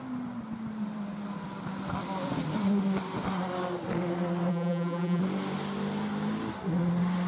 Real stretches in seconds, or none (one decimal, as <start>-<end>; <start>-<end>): 0.0-4.5; 5.2-7.3